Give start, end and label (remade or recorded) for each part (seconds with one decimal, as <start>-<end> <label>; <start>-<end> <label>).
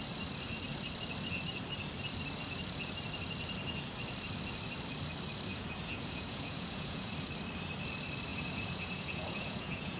0.0-5.5 recorded; 5.5-7.1 remade; 7.1-8.3 recorded; 8.3-10.0 remade